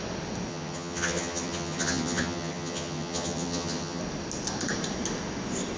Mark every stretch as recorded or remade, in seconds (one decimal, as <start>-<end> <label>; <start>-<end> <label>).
0.0-0.5 recorded; 0.5-4.0 remade; 4.0-5.8 recorded